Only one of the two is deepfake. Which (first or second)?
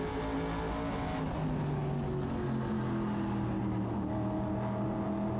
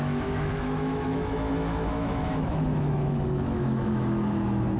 second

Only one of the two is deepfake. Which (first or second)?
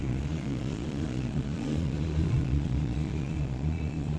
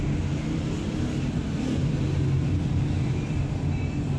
first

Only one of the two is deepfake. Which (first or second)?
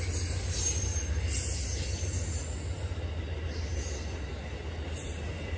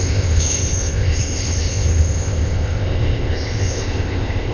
second